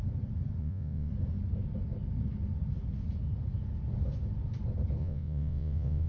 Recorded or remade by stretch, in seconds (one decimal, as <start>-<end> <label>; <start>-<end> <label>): 0.0-0.6 recorded; 0.6-1.1 remade; 1.1-5.0 recorded; 5.0-6.1 remade